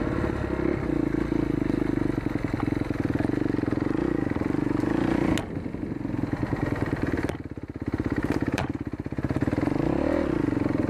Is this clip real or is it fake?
real